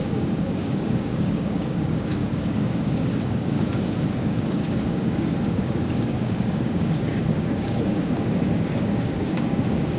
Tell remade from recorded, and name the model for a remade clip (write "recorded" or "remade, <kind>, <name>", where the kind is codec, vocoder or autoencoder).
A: remade, codec, DAC